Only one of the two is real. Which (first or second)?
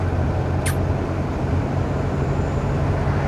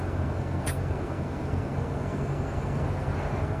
first